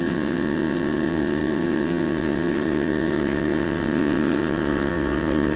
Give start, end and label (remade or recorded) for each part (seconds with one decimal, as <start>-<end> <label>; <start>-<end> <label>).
0.0-5.6 remade